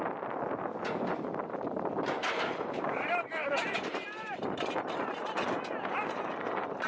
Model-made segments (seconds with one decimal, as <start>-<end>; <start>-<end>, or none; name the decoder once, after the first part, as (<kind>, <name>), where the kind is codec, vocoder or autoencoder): 2.2-6.2 (vocoder, BigVGAN v2)